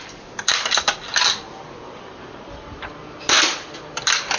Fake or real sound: real